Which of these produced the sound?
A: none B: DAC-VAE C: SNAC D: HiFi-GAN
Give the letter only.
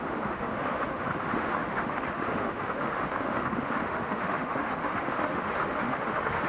B